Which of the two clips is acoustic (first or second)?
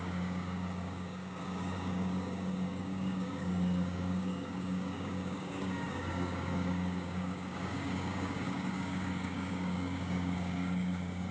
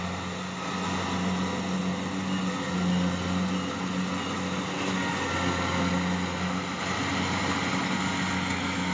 second